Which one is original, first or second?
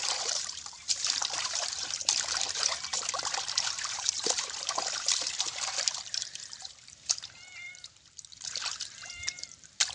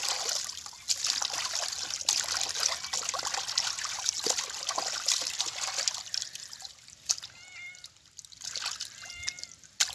second